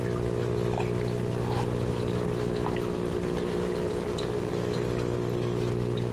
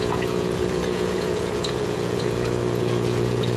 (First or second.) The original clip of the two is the first